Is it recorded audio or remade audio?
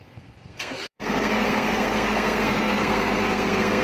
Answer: remade